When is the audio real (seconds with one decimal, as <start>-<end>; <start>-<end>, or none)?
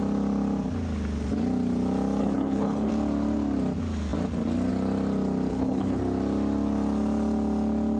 0.0-2.2; 2.9-5.5; 6.0-8.0